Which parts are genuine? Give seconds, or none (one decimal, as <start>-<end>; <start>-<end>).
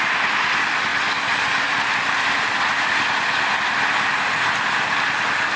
0.0-5.6